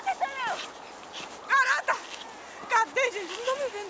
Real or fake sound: real